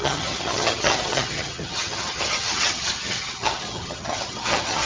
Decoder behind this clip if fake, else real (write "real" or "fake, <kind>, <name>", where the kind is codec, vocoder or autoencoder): fake, vocoder, HiFi-GAN